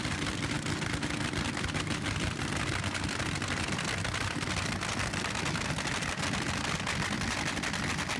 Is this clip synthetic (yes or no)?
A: no